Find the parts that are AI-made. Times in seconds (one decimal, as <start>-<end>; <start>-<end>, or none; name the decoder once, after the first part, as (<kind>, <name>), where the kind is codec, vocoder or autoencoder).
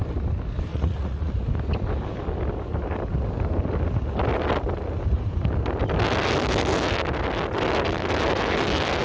0.7-1.3 (vocoder, Vocos)